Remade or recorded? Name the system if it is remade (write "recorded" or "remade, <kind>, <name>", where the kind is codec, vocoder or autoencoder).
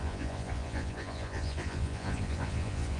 remade, vocoder, Vocos